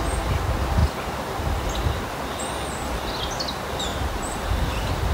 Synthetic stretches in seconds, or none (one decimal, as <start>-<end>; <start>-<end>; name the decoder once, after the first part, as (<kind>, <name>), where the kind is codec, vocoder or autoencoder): 3.9-5.1 (vocoder, BigVGAN v2)